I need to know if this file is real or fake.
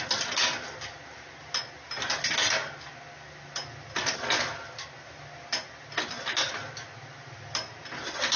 real